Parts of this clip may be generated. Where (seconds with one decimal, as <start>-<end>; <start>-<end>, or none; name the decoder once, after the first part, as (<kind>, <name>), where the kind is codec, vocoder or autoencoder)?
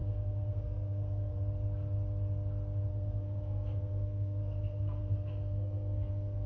0.0-1.4 (codec, SNAC); 2.9-6.5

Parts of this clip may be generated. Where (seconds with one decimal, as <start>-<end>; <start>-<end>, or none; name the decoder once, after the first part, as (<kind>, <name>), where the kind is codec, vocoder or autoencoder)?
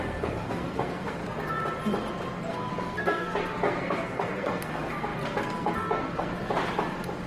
0.0-1.2 (codec, SNAC); 2.5-6.3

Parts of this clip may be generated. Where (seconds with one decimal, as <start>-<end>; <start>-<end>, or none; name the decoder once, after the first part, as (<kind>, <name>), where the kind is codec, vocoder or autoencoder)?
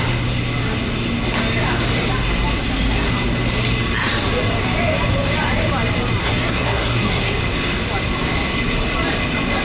6.2-7.4 (codec, SNAC)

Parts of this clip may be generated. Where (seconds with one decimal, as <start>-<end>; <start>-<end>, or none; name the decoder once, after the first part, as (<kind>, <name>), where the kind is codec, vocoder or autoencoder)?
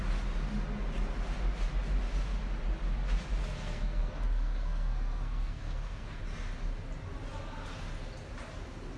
3.4-6.2 (codec, SNAC)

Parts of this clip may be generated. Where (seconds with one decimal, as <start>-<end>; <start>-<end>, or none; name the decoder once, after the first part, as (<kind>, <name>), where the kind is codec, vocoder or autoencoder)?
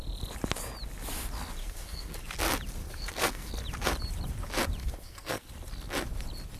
1.6-2.2 (codec, SNAC); 2.8-3.5; 4.8-5.5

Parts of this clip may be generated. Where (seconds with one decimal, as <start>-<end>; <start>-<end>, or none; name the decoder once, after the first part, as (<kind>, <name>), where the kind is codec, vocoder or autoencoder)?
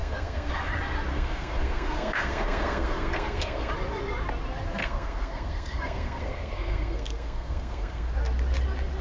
0.0-0.7 (codec, SNAC); 1.1-3.7; 4.8-8.1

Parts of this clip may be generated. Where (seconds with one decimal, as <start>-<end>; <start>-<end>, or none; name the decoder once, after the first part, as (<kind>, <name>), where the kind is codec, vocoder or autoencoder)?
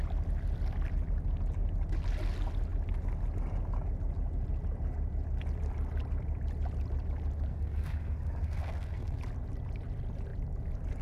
7.5-9.2 (codec, SNAC)